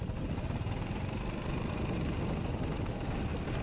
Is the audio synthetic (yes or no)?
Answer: no